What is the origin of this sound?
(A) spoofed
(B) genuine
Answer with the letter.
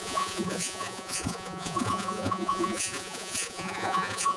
A